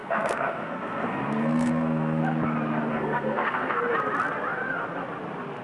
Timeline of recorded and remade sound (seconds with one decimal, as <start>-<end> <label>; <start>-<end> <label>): 0.0-2.2 remade; 2.2-2.9 recorded; 2.9-3.8 remade; 3.8-5.6 recorded